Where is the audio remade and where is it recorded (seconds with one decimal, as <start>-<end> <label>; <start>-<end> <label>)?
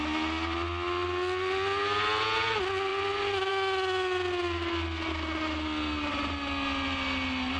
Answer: 0.0-7.6 recorded